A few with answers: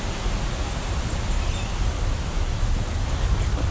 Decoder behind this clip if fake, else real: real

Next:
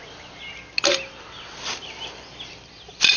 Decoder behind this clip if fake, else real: real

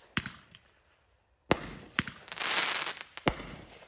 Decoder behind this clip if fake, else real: real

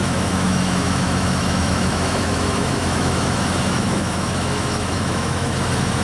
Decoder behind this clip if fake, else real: fake, autoencoder, DAC-VAE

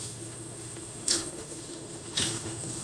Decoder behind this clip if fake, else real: fake, autoencoder, DAC-VAE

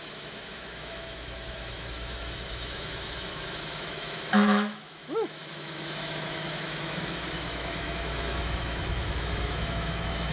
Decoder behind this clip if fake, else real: fake, autoencoder, DAC-VAE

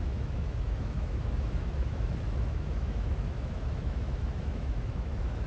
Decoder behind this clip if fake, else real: fake, autoencoder, DAC-VAE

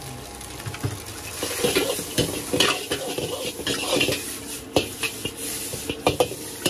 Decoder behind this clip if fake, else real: real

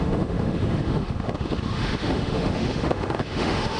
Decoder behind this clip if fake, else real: fake, autoencoder, DAC-VAE